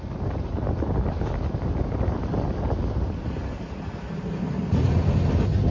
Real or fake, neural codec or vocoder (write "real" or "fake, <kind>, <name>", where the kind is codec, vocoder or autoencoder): real